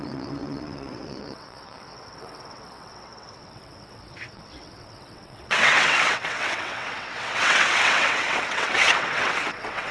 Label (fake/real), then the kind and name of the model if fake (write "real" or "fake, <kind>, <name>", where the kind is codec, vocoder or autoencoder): fake, vocoder, WaveNeXt